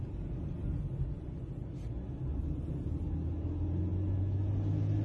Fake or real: real